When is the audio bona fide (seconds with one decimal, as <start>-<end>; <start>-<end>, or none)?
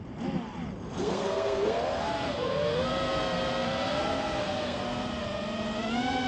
0.0-1.0; 4.8-6.3